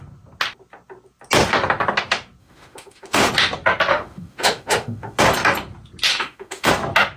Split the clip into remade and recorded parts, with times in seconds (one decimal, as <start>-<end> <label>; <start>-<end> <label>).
0.0-2.4 recorded; 2.4-3.3 remade; 3.3-3.9 recorded; 3.9-5.2 remade; 5.2-6.1 recorded; 6.1-6.7 remade; 6.7-7.2 recorded